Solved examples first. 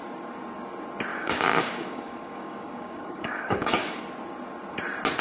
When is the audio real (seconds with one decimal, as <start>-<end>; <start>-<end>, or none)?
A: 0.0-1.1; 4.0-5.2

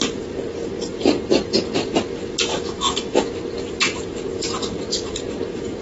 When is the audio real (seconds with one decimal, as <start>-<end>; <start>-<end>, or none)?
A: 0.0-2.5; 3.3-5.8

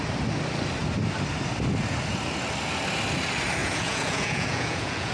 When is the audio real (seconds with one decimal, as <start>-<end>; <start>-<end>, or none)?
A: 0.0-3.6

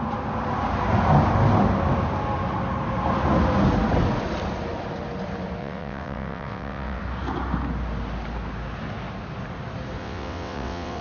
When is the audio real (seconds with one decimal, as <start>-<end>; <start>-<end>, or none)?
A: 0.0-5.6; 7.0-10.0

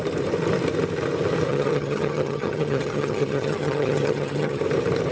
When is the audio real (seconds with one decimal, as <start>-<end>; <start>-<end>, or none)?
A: 0.0-1.5; 4.6-5.1